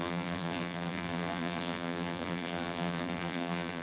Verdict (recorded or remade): remade